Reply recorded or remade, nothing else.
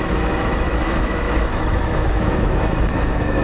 remade